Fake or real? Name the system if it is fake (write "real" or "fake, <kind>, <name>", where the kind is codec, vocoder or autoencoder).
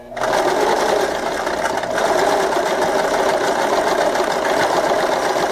real